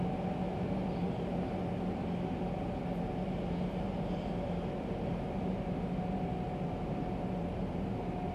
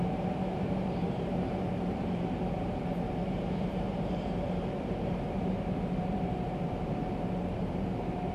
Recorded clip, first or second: first